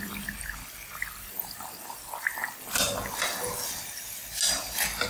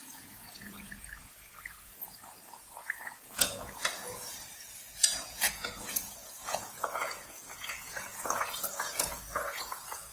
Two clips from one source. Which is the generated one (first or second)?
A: second